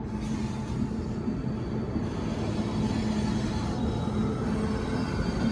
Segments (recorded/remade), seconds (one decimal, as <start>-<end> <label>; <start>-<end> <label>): 0.0-5.5 recorded